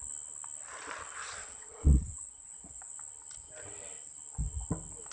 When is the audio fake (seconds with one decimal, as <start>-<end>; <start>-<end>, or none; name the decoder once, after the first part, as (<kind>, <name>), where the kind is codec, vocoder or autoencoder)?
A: 1.4-2.9 (vocoder, Vocos)